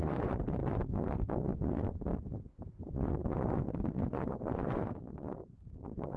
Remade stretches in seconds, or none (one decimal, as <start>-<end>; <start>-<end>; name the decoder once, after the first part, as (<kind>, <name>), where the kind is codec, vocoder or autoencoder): 0.0-6.2 (vocoder, Vocos)